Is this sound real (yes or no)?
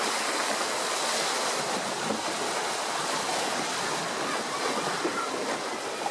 yes